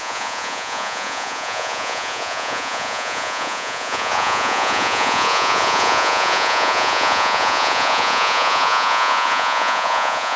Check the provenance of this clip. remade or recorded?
remade